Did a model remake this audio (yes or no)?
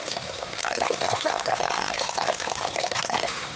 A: yes